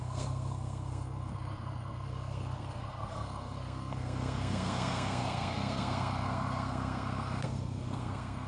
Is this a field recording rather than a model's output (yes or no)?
no